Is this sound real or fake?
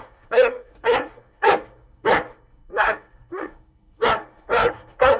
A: fake